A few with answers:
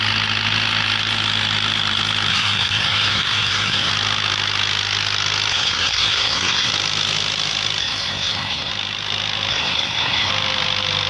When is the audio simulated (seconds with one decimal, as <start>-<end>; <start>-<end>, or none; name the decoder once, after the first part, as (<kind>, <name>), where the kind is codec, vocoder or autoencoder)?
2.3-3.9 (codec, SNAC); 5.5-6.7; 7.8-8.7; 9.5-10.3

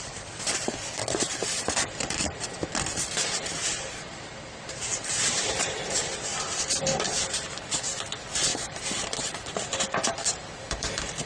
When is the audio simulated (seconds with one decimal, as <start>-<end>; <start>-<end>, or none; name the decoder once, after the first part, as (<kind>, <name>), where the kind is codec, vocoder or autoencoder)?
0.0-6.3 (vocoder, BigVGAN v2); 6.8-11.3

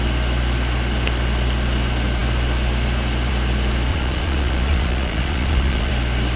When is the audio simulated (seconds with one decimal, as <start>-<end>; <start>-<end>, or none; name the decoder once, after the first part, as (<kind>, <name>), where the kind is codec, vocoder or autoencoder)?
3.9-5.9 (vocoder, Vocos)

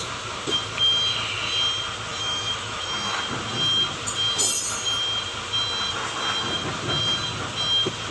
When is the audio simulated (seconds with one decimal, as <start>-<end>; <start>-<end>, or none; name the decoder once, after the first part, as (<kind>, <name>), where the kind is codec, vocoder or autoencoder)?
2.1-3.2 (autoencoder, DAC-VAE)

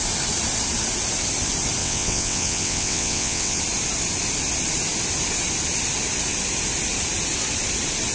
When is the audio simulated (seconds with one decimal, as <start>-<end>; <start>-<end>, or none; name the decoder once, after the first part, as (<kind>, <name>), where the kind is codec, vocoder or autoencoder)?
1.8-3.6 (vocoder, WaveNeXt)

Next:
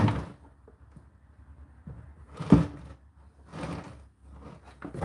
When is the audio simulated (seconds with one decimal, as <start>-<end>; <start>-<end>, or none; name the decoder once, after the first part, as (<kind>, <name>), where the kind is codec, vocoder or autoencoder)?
none

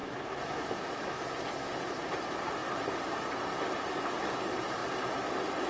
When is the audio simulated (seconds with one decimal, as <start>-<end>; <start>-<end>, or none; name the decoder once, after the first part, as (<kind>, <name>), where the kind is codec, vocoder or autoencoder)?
0.0-1.2 (autoencoder, DAC-VAE)